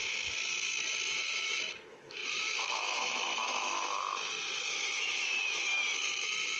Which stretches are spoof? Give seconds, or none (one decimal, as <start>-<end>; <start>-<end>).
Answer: 1.1-6.6